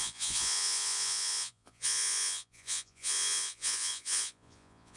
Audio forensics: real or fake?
fake